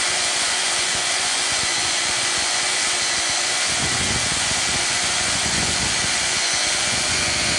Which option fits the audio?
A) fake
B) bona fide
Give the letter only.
A